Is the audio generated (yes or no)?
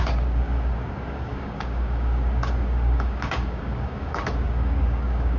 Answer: yes